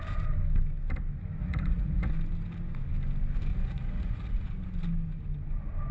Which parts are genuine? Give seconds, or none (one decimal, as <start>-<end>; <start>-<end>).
0.0-1.4; 2.1-3.5; 4.5-5.9